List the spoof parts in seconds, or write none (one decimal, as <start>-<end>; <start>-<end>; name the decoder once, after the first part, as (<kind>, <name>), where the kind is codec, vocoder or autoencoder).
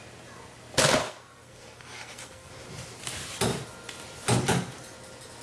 1.0-2.5 (codec, SNAC)